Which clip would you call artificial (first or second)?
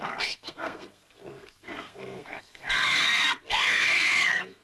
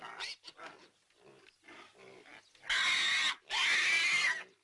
first